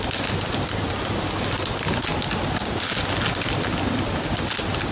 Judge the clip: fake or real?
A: real